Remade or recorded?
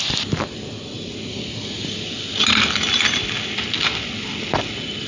recorded